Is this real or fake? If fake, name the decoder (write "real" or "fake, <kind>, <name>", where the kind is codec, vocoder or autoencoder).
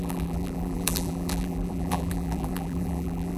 fake, vocoder, BigVGAN v2